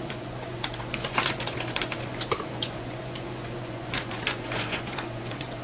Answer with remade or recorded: remade